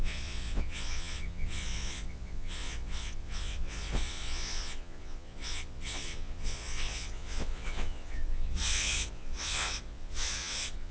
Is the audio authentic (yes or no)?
no